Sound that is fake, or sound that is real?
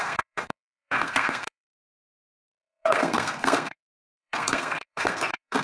fake